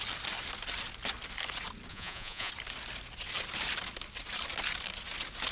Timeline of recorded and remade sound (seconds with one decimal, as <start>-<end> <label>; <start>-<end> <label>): 0.0-1.9 recorded; 1.9-2.5 remade; 2.5-5.5 recorded